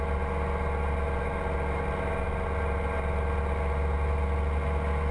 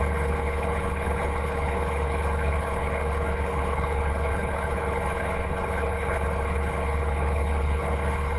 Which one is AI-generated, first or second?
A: second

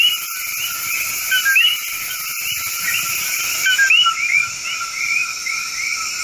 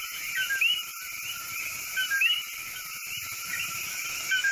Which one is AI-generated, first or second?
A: second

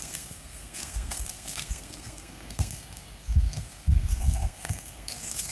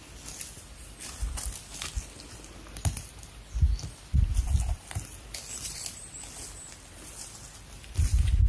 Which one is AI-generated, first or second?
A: first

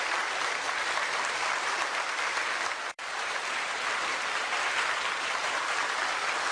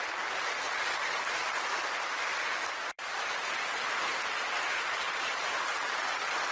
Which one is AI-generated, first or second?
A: first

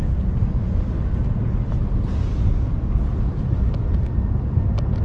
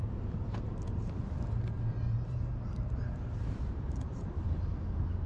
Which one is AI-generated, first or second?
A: second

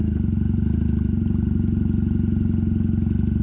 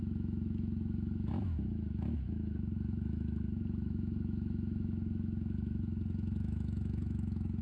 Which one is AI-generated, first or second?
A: second